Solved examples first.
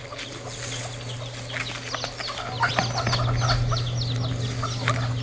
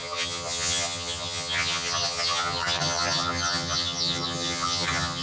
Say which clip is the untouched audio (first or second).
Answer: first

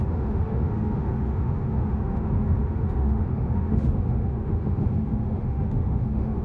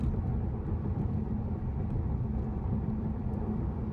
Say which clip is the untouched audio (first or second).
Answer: second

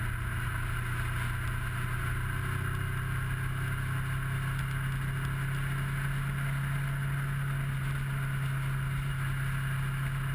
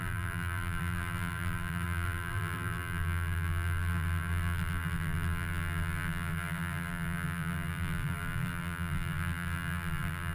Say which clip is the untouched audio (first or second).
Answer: first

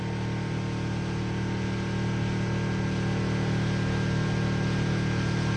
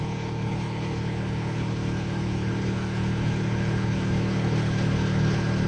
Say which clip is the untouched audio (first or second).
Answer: first